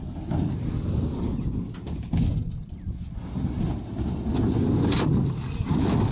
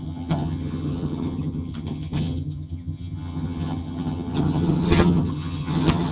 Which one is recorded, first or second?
first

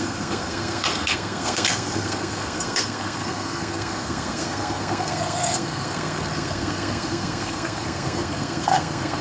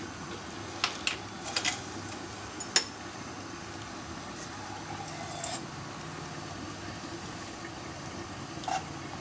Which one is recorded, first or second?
second